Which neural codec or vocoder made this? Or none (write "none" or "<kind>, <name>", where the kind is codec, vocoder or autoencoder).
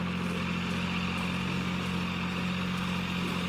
none